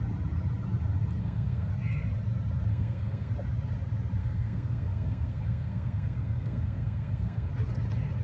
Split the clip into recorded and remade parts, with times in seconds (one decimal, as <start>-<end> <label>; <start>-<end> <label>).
0.0-1.2 recorded; 1.2-1.7 remade; 1.7-2.7 recorded; 2.7-3.3 remade; 3.3-4.2 recorded; 4.2-7.5 remade; 7.5-8.2 recorded